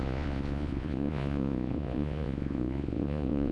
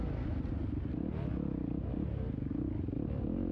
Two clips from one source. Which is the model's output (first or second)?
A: first